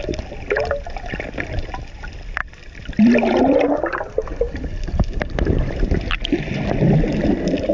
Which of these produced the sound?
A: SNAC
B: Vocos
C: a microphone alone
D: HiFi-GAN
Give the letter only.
C